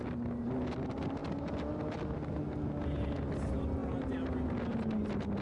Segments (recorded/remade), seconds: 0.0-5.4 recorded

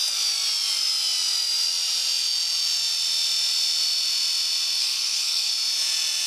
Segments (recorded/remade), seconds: 0.0-4.8 recorded; 4.8-5.5 remade; 5.5-6.3 recorded

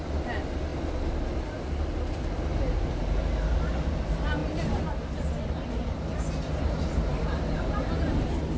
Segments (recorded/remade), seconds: 0.0-2.5 recorded; 2.5-3.2 remade; 3.2-8.6 recorded